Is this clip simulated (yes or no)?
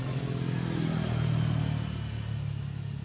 no